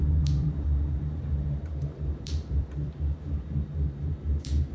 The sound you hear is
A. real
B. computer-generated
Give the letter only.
B